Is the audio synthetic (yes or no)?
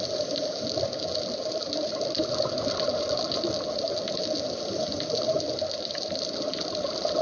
no